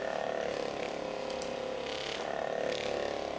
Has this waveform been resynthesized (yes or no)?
no